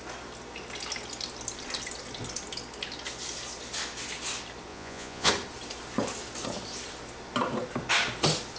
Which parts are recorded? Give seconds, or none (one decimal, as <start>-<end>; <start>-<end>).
0.0-4.7; 5.3-8.6